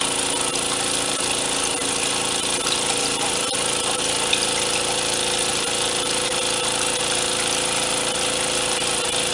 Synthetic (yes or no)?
no